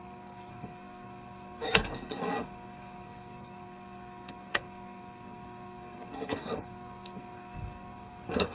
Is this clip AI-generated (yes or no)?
yes